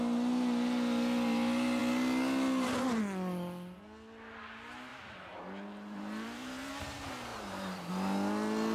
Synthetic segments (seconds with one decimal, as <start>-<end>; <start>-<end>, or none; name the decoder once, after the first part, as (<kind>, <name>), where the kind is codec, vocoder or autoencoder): 4.9-6.7 (vocoder, BigVGAN v2); 7.3-7.9